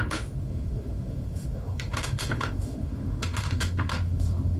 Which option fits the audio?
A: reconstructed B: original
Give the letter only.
A